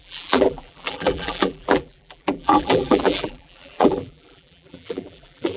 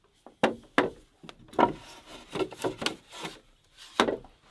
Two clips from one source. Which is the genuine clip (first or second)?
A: second